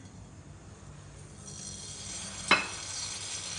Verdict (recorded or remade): recorded